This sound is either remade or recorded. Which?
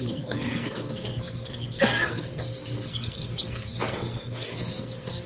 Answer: remade